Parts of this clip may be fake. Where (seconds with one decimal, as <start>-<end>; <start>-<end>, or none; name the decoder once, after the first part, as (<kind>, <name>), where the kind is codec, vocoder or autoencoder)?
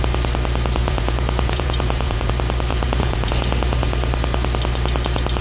0.8-2.3 (vocoder, Vocos); 2.7-3.3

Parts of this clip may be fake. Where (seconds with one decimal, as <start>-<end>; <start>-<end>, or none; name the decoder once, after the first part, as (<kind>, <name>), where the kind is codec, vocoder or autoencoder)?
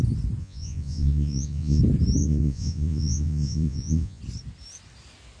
0.4-1.8 (vocoder, Vocos); 2.2-4.2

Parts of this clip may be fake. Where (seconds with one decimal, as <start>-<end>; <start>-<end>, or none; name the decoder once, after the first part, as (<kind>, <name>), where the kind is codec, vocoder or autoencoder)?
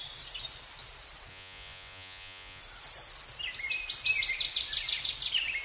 1.3-2.6 (vocoder, Vocos)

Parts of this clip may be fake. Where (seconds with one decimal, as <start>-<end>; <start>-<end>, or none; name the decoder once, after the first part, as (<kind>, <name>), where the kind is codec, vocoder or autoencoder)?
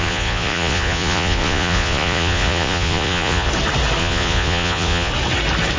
0.0-3.5 (vocoder, Vocos); 4.0-5.1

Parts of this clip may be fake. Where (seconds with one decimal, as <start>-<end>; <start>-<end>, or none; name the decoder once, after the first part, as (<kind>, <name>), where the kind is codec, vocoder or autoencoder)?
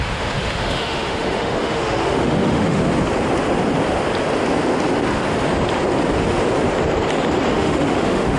0.0-2.8 (autoencoder, DAC-VAE); 7.5-8.4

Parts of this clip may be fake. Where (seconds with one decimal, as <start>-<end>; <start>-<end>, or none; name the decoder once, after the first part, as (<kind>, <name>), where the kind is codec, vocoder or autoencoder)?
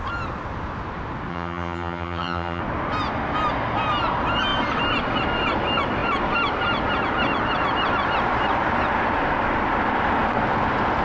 1.3-2.6 (vocoder, HiFi-GAN)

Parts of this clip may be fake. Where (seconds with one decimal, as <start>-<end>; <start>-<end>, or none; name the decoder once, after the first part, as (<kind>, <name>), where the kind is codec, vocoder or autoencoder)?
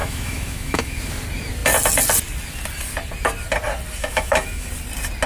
0.0-1.0 (autoencoder, DAC-VAE); 4.0-4.7